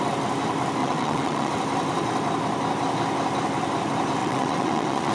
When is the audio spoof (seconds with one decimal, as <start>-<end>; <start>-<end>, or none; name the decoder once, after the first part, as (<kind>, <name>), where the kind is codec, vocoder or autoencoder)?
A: 0.8-1.5 (vocoder, WaveNeXt); 4.2-5.1